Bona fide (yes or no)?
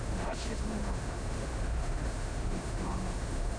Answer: no